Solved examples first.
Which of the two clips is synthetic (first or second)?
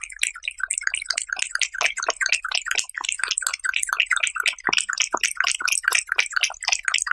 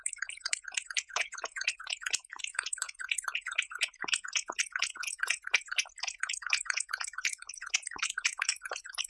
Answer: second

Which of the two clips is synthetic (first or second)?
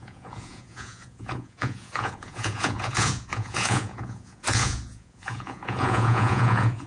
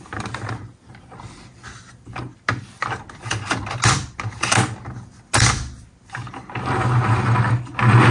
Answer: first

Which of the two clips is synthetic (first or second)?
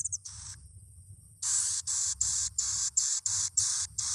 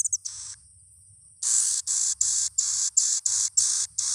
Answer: first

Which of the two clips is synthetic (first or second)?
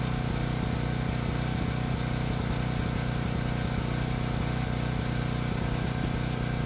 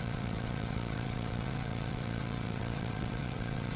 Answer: second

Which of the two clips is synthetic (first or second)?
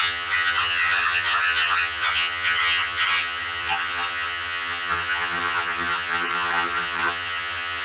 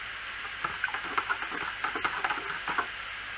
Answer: first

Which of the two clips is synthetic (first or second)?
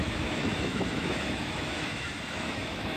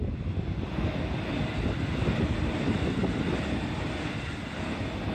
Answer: first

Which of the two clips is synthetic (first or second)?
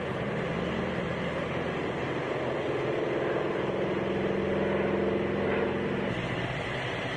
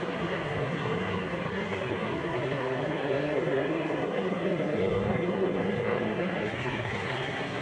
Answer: second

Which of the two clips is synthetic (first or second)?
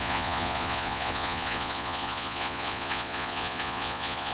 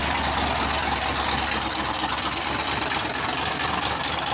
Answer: first